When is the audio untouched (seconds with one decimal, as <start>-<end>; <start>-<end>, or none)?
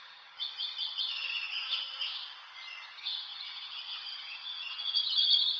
1.9-2.9